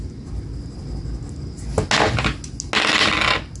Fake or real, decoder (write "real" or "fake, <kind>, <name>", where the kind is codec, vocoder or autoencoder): real